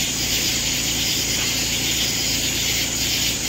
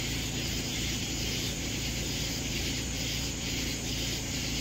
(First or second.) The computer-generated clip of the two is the second